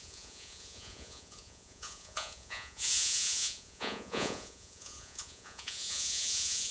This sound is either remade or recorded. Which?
remade